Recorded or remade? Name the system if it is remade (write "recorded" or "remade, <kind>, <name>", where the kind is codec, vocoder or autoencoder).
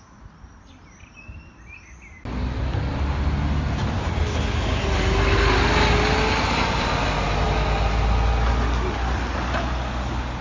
recorded